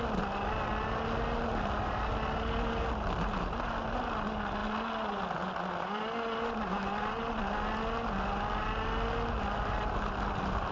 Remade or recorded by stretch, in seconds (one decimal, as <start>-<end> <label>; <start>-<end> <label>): 0.0-10.7 recorded